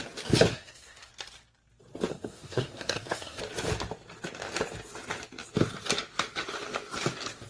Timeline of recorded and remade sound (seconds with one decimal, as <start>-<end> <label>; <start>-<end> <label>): 0.0-0.5 recorded; 0.5-1.1 remade; 1.1-2.1 recorded; 2.1-3.4 remade; 3.4-7.5 recorded